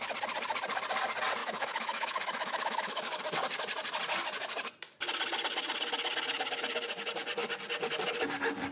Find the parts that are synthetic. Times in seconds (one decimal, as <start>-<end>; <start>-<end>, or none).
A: 1.4-3.2